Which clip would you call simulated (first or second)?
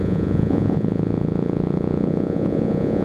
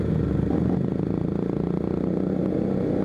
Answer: first